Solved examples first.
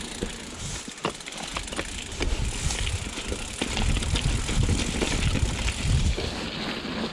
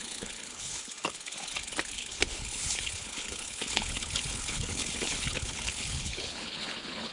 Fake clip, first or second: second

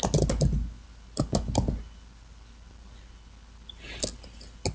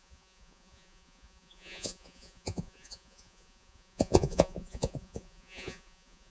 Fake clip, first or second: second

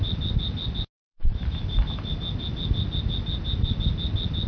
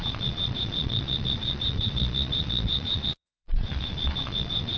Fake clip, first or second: second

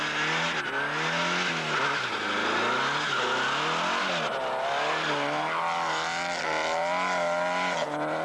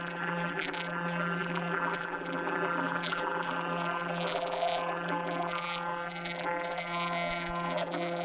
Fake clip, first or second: second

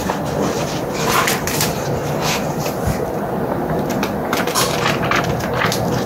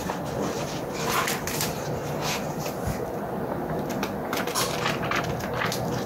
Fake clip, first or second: first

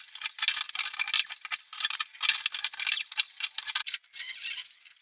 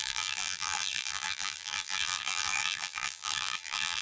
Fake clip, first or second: second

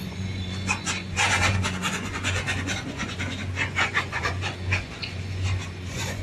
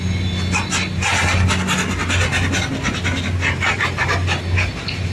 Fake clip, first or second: first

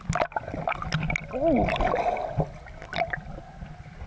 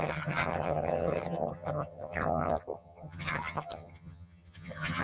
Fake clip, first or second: second